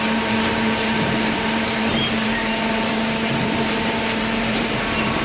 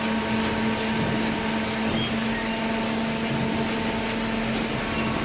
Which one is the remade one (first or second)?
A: first